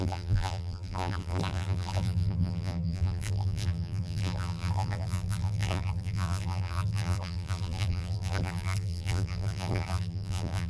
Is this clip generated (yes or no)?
yes